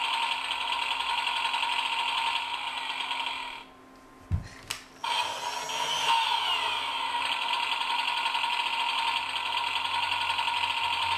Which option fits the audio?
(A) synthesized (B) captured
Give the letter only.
B